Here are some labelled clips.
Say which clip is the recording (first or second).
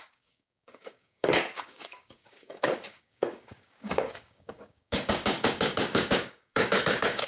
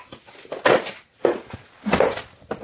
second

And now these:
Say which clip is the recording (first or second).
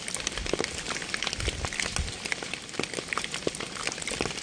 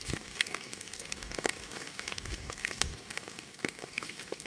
first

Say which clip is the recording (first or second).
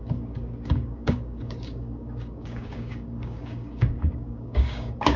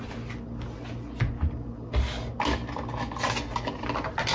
second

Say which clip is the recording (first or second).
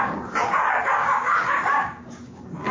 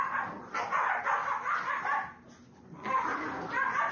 second